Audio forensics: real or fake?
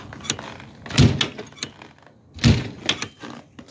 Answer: real